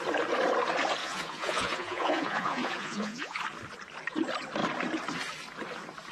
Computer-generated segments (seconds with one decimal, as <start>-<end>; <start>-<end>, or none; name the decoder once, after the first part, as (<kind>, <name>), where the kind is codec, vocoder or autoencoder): 1.0-3.4 (vocoder, Vocos)